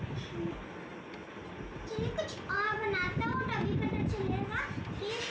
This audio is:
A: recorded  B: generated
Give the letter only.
A